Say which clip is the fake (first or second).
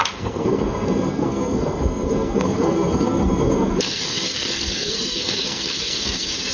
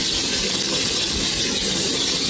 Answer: first